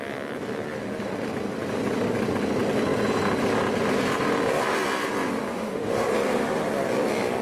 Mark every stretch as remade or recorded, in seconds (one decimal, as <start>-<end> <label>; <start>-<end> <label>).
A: 0.0-5.5 recorded; 5.5-6.1 remade; 6.1-7.4 recorded